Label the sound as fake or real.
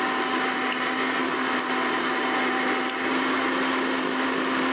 real